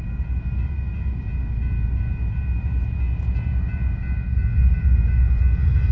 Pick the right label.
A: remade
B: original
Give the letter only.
B